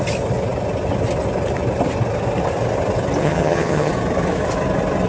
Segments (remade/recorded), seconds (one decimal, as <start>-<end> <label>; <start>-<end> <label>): 0.0-3.2 recorded; 3.2-3.9 remade; 3.9-5.1 recorded